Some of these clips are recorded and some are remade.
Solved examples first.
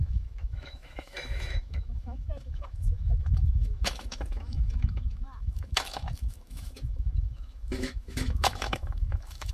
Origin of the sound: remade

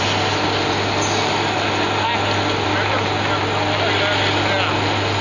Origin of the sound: recorded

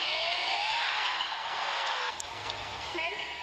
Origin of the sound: remade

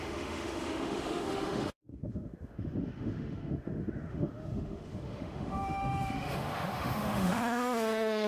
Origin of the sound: remade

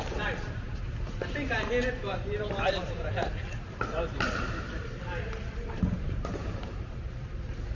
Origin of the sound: remade